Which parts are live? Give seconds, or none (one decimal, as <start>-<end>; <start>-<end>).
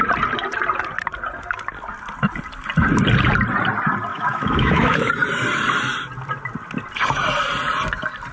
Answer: 0.0-4.1; 5.1-8.3